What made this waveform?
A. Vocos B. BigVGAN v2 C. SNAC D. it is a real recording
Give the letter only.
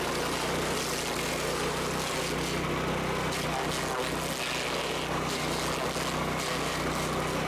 D